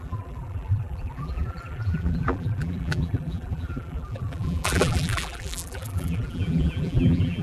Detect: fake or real fake